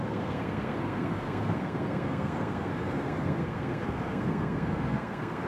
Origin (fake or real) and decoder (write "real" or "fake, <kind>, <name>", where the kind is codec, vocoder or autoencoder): fake, codec, SNAC